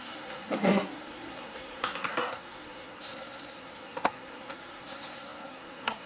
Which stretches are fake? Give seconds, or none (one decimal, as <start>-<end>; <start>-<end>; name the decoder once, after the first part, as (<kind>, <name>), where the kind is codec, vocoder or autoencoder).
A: 0.0-6.1 (codec, SNAC)